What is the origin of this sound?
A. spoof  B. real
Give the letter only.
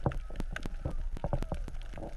B